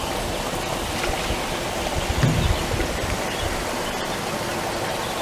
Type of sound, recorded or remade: recorded